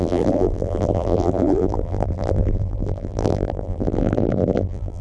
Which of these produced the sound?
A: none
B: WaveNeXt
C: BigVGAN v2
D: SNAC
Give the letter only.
C